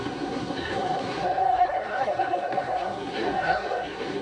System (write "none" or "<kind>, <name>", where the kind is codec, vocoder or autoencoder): codec, SNAC